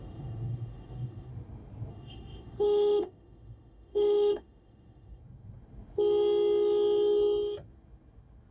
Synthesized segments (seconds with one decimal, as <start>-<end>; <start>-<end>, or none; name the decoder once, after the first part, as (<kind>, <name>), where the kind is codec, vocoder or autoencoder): 0.0-1.3 (autoencoder, DAC-VAE); 1.9-5.2